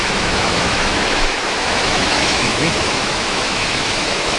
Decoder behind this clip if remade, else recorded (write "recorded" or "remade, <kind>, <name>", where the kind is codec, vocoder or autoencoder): remade, autoencoder, DAC-VAE